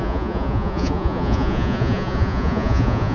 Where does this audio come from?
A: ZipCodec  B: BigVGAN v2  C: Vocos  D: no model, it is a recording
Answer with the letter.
C